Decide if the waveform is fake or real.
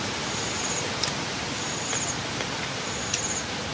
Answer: real